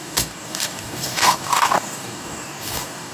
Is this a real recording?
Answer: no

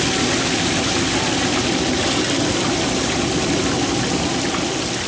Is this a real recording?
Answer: yes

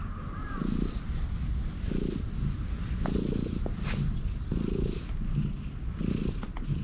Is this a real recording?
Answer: yes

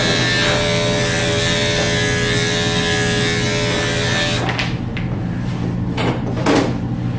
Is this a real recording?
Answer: yes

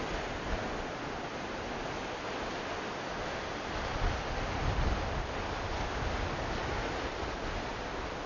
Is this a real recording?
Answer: yes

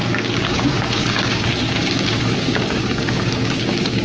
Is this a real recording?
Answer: no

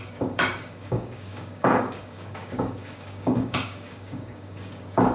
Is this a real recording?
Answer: no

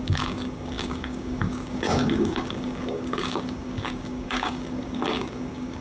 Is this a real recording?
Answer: no